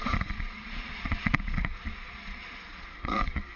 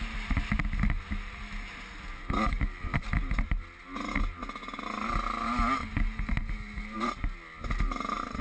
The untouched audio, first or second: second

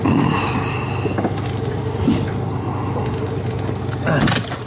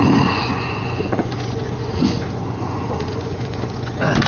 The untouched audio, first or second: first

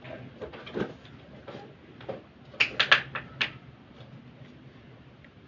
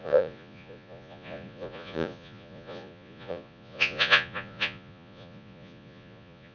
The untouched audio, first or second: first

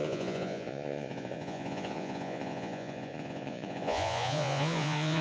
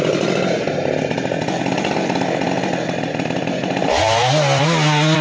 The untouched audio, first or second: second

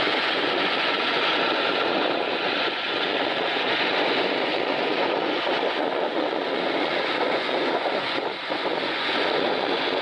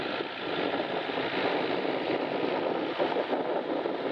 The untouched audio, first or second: second